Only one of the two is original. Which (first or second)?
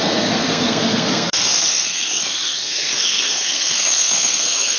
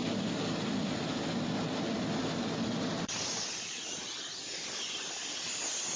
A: second